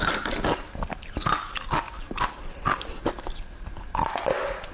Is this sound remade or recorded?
recorded